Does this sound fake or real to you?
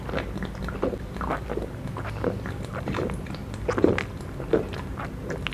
real